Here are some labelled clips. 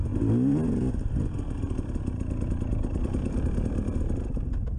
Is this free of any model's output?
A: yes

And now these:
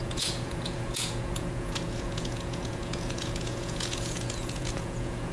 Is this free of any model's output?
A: no